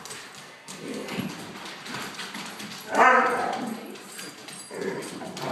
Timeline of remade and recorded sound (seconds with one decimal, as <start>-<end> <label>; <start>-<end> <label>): 0.0-0.4 recorded; 0.4-1.2 remade; 1.2-5.5 recorded